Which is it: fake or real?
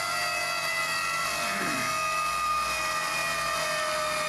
real